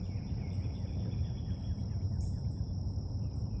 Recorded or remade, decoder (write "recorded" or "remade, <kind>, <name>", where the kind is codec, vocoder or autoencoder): remade, vocoder, BigVGAN v2